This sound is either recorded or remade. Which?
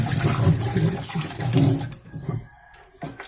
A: recorded